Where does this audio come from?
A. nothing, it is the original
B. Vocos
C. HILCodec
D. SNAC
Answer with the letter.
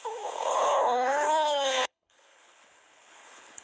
C